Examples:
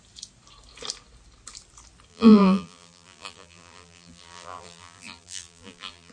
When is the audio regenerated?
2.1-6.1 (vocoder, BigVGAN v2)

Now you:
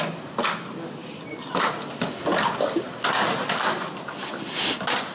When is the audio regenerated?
1.0-3.1 (vocoder, BigVGAN v2)

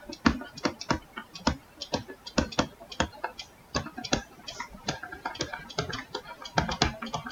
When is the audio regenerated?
1.8-6.2 (vocoder, BigVGAN v2)